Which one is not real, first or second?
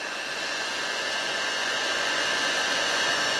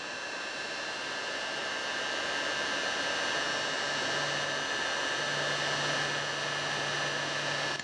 first